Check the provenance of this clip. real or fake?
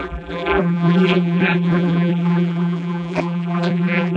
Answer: fake